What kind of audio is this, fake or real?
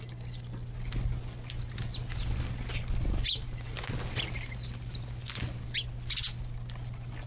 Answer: real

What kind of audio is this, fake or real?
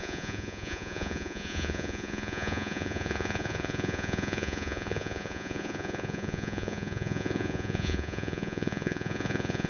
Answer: fake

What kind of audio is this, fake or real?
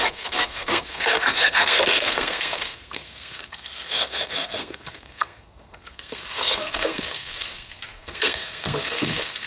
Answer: fake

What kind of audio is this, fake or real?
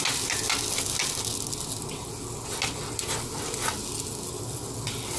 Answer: real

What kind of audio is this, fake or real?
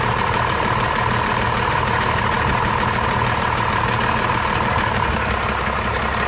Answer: real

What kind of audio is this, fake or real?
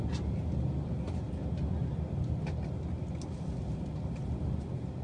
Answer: real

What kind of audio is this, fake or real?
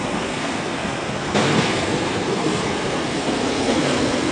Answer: fake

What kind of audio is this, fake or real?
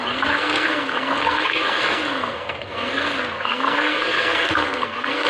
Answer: fake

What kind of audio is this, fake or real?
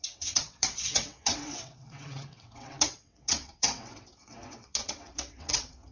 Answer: fake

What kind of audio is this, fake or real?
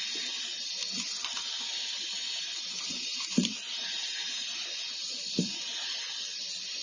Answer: real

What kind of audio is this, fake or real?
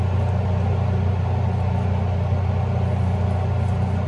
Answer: real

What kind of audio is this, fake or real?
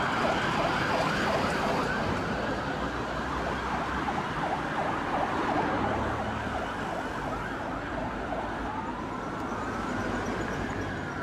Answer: real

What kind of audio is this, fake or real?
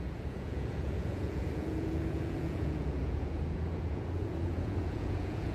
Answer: fake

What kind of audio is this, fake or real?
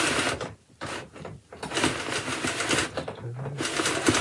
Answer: real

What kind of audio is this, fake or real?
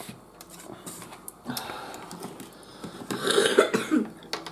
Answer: real